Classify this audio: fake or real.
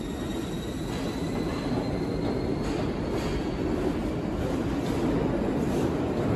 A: real